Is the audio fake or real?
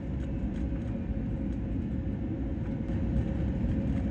real